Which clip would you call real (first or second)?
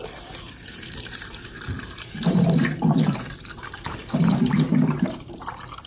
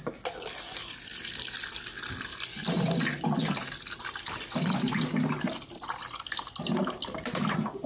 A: second